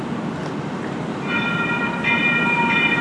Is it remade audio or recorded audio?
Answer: remade